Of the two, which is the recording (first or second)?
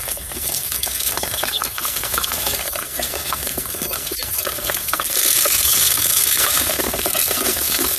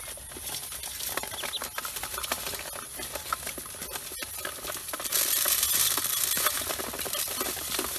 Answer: second